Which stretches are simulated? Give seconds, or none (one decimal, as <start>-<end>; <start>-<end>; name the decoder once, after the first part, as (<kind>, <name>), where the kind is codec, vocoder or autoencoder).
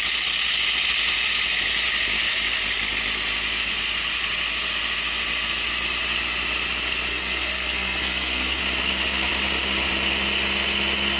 7.1-8.6 (codec, SNAC)